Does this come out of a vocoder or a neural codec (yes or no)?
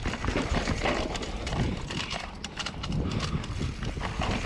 no